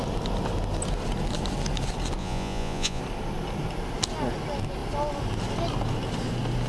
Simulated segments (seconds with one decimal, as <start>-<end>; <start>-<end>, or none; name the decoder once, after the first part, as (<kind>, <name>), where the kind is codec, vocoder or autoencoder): 2.2-3.0 (vocoder, Vocos)